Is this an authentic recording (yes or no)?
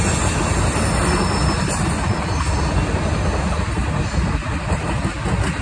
yes